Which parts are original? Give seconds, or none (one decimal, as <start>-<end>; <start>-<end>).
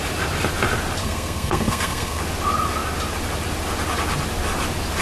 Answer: 0.0-1.0; 2.2-5.0